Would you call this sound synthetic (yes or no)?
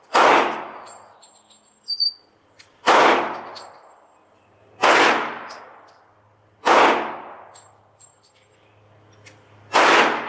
no